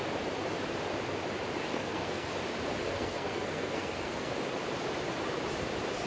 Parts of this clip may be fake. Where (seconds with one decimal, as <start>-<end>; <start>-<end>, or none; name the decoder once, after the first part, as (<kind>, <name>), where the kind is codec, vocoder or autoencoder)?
1.7-2.3 (codec, SNAC); 2.9-4.3